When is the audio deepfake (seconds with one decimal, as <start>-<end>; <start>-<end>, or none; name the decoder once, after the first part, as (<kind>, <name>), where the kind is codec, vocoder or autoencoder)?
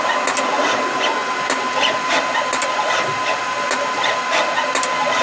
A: none